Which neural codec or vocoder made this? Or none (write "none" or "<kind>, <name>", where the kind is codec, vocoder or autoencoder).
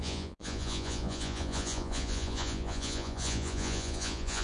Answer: vocoder, Vocos